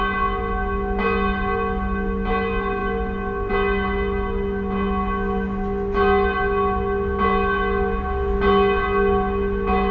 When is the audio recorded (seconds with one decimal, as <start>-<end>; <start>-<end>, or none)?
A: 0.0-9.9